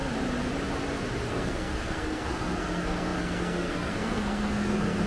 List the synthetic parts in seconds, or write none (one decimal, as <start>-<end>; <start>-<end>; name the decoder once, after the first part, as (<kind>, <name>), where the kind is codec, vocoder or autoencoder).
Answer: 1.3-5.1 (codec, SNAC)